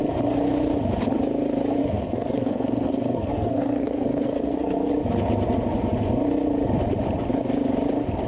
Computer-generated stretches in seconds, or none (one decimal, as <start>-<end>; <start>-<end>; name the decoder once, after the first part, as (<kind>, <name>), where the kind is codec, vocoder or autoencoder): 1.8-4.9 (codec, SNAC)